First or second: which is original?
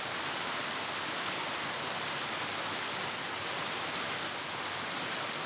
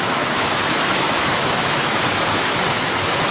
first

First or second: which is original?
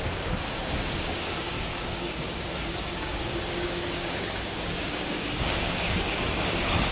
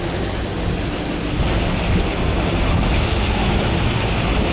second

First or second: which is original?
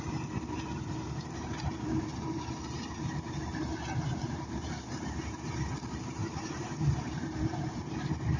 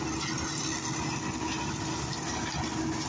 second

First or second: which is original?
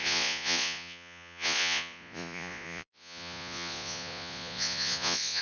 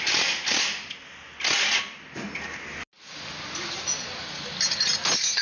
second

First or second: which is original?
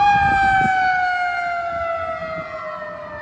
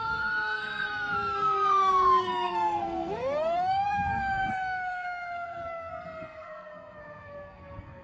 first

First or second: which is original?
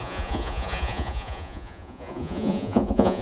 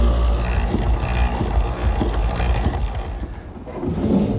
second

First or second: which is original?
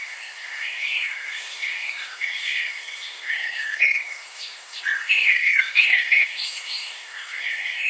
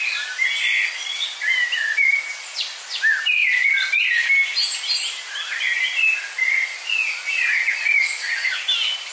second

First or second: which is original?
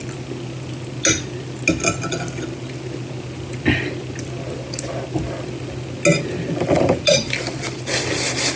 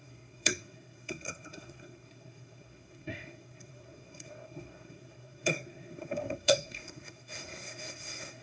first